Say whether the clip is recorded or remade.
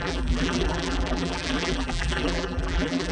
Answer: remade